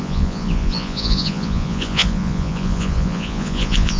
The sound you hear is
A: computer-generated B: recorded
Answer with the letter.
A